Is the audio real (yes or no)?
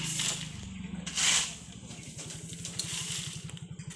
yes